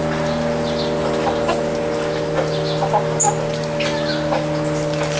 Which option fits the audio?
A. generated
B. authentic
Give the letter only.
B